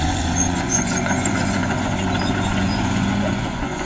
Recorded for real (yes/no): no